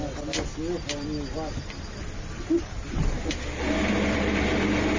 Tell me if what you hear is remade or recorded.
recorded